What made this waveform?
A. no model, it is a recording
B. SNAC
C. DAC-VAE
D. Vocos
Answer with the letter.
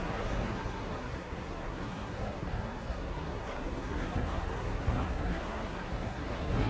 B